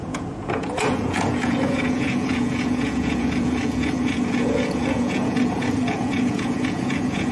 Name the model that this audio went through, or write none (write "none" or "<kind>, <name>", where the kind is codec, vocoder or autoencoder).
vocoder, Vocos